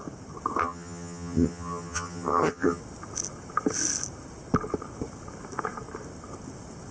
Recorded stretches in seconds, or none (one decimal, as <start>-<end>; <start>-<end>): 0.0-0.6; 2.8-6.9